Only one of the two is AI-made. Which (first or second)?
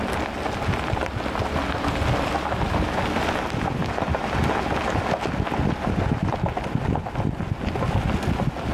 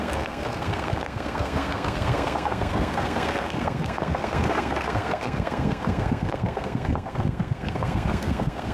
second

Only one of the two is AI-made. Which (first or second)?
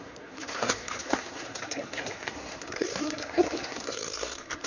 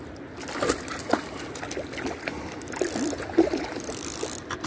first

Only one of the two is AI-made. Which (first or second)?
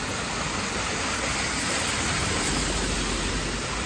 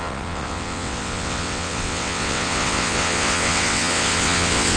second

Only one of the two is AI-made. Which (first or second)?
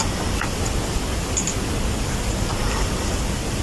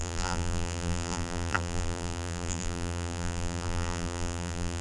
second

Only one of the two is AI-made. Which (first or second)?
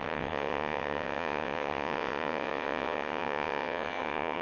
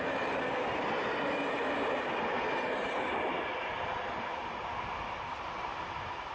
first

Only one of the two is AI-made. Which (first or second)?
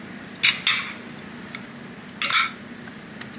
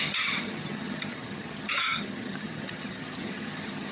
second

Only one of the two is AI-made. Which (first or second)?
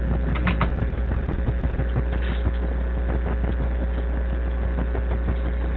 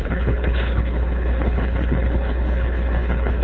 second